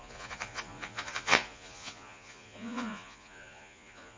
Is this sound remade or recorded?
remade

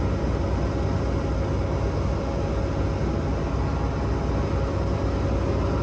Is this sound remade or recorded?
recorded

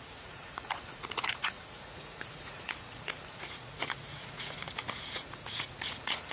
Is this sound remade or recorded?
remade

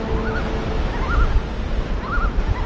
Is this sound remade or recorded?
recorded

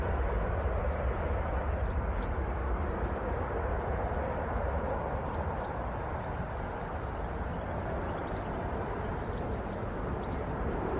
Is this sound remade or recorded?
recorded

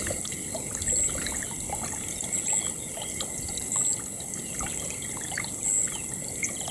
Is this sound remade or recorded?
recorded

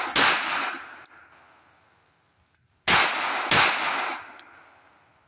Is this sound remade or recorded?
recorded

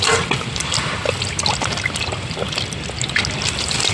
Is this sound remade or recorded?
recorded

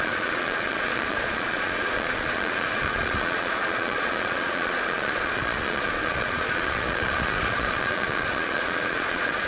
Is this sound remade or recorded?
remade